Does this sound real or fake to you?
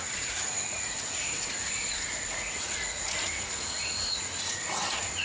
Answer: fake